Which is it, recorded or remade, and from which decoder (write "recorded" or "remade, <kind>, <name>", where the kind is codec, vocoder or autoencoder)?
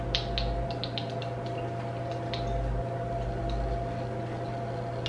recorded